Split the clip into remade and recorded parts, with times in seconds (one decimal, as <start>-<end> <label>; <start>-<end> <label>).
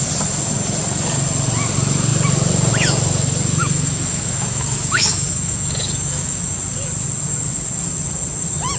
0.0-3.6 recorded; 3.6-6.6 remade; 6.6-8.8 recorded